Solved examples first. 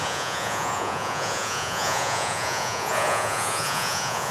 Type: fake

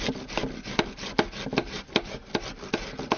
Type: real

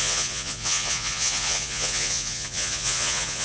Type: fake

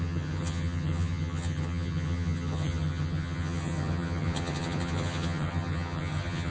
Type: fake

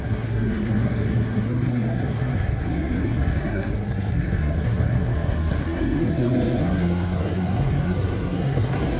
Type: fake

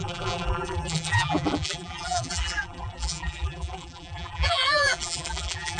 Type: fake